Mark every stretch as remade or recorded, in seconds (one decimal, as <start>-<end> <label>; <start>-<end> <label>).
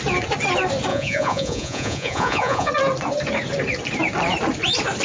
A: 0.0-0.9 recorded; 0.9-2.7 remade; 2.7-5.0 recorded